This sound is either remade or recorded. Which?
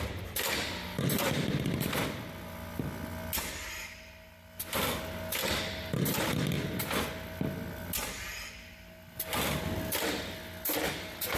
recorded